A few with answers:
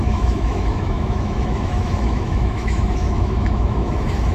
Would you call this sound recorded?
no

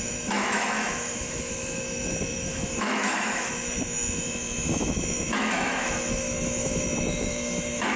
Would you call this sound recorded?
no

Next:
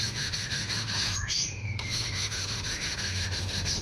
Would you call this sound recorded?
no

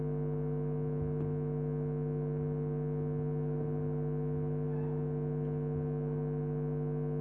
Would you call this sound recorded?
yes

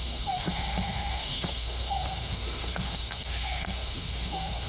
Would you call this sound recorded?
no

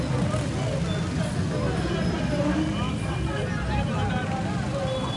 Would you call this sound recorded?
yes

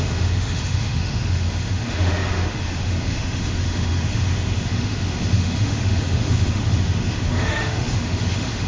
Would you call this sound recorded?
no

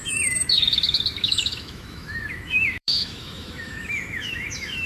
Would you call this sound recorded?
no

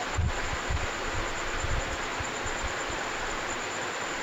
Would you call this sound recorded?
yes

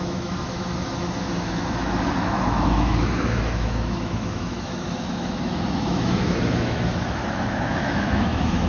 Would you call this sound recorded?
no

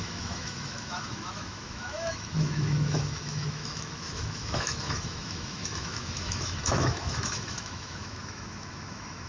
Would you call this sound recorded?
no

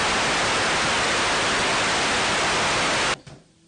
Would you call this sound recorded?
yes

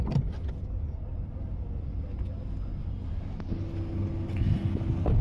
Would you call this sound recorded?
yes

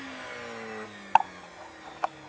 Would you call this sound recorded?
yes